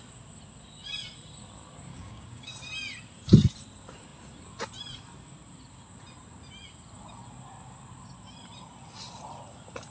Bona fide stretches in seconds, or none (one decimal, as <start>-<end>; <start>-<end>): 0.0-1.9; 2.5-9.9